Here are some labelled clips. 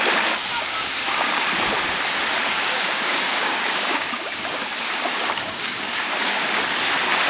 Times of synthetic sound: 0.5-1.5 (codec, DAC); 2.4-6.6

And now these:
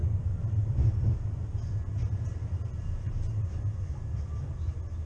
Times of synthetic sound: none

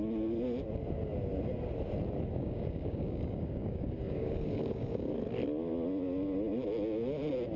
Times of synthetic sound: 2.3-5.1 (codec, DAC)

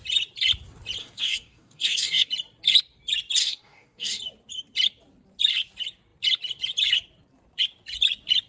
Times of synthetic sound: 1.0-2.3 (codec, DAC); 3.4-4.2